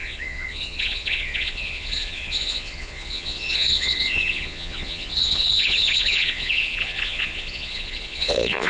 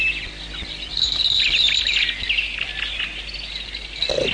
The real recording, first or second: second